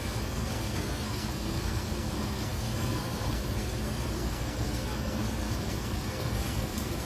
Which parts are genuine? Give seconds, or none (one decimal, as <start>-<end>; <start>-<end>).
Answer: none